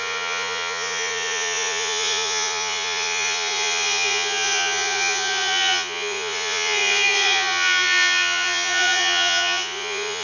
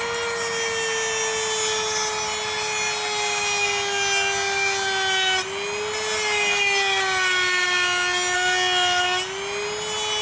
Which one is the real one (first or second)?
second